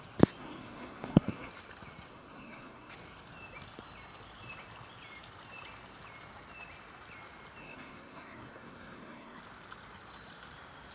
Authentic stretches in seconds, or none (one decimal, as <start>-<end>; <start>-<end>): 0.0-0.4; 1.5-2.1; 2.9-7.6; 9.4-10.9